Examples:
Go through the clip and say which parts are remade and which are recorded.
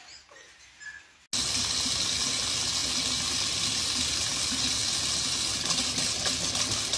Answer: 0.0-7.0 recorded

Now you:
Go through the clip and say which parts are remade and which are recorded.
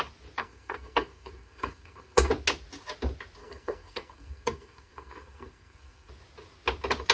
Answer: 0.0-0.4 recorded; 0.4-2.3 remade; 2.3-3.4 recorded; 3.4-6.1 remade; 6.1-7.1 recorded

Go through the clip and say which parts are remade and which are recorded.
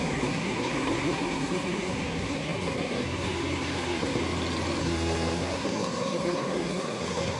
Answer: 0.0-4.2 remade; 4.2-4.8 recorded; 4.8-7.4 remade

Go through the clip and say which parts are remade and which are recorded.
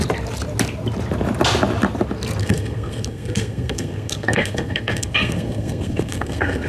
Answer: 0.0-2.4 recorded; 2.4-6.7 remade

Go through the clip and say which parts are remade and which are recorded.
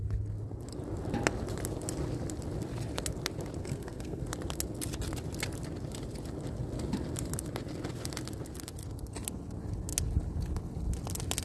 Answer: 0.0-3.6 recorded; 3.6-4.2 remade; 4.2-11.4 recorded